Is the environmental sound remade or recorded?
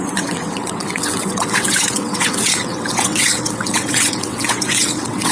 remade